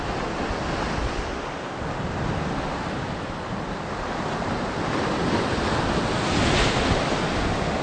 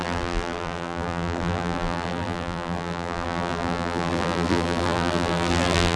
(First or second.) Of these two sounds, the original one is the first